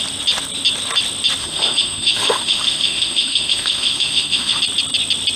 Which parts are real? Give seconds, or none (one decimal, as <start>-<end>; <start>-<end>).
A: 0.0-1.4; 4.6-5.4